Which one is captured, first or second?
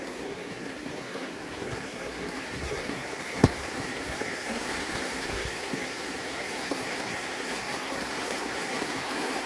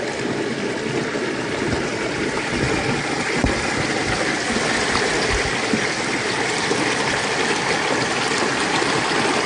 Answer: second